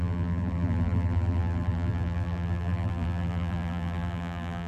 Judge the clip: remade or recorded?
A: remade